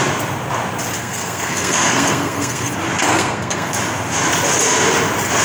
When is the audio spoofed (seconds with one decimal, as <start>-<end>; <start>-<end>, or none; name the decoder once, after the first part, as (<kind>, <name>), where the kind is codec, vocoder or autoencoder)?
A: 1.0-2.7 (codec, SNAC); 3.1-3.7